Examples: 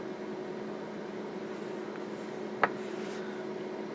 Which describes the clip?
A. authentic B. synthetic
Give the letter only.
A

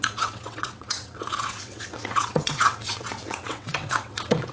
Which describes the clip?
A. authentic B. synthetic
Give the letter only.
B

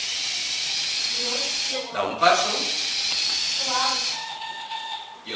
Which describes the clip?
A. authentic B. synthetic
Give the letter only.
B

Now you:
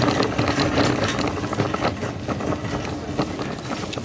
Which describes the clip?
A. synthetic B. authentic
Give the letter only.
B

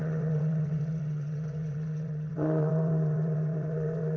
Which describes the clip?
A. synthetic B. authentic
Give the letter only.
A